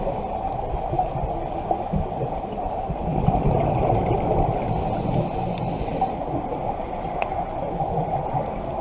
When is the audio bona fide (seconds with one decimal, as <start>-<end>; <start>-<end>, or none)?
0.0-8.8